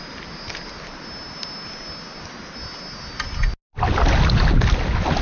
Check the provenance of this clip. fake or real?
real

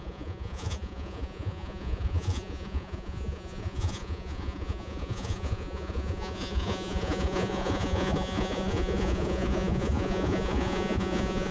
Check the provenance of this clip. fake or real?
fake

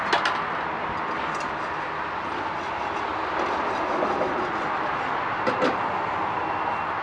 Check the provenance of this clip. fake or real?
real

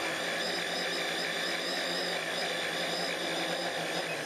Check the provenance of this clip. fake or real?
real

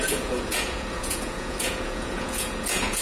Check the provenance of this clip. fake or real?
fake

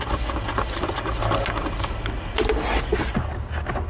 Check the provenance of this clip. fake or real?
real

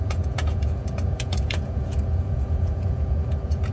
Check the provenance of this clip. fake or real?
fake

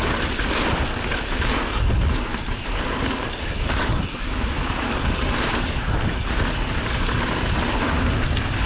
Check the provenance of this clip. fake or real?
real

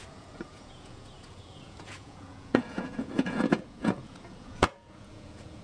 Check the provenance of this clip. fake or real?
fake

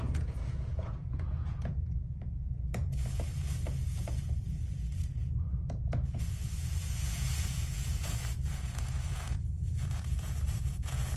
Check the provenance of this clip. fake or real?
fake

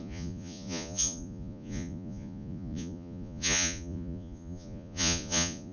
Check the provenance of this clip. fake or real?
fake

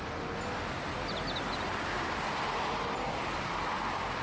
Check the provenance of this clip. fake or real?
real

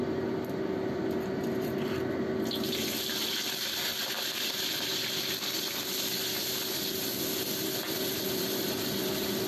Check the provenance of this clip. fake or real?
real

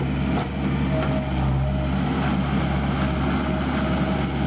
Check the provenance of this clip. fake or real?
real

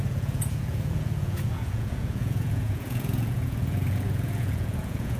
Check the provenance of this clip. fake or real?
fake